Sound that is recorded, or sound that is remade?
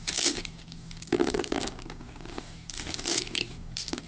remade